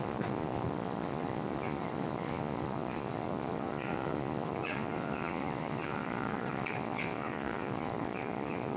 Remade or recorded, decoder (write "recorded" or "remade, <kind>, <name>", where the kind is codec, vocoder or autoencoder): remade, vocoder, Vocos